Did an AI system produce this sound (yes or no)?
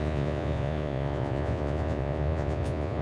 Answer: yes